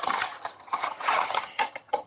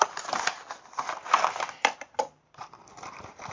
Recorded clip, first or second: second